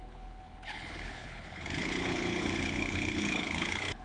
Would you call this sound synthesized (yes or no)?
yes